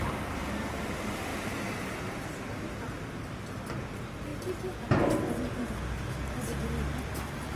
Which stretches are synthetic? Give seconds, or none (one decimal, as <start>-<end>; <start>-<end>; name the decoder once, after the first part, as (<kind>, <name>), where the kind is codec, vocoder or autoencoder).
1.3-2.5 (vocoder, BigVGAN v2)

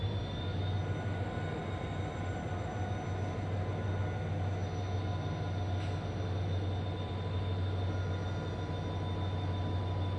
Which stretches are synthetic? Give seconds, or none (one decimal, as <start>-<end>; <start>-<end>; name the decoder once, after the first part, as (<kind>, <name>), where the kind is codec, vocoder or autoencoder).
none

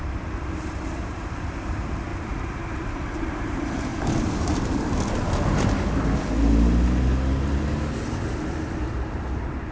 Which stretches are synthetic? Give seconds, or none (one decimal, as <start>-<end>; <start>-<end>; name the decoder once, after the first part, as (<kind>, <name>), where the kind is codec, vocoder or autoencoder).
0.0-2.1 (vocoder, BigVGAN v2); 2.8-3.9; 8.4-9.7

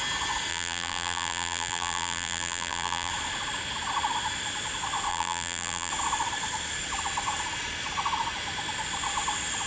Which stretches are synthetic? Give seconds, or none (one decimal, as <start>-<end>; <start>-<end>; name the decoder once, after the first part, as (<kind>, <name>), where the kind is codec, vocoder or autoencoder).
0.5-3.1 (vocoder, BigVGAN v2); 5.1-5.9

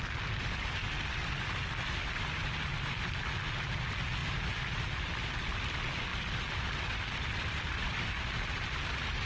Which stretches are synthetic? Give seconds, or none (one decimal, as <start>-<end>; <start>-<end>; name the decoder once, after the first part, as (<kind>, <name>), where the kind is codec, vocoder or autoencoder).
6.1-8.7 (vocoder, BigVGAN v2)

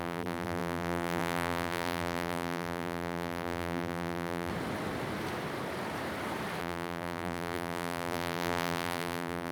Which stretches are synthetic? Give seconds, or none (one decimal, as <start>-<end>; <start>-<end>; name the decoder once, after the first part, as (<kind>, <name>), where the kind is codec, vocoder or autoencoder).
0.0-4.5 (vocoder, BigVGAN v2); 6.6-9.5

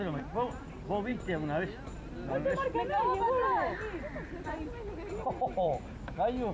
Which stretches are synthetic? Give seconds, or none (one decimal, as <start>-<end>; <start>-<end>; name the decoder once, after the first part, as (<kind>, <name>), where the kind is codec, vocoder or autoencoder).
0.0-1.1 (vocoder, BigVGAN v2); 2.3-6.5